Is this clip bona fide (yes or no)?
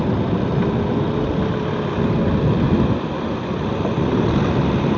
yes